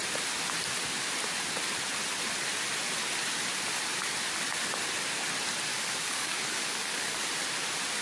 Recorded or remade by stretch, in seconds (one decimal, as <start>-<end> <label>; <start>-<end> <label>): 0.0-5.7 recorded; 5.7-7.3 remade; 7.3-8.0 recorded